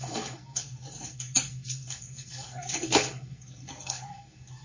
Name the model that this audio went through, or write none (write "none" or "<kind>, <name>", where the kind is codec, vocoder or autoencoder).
codec, SNAC